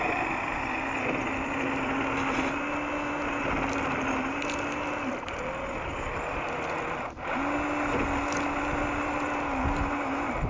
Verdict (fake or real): real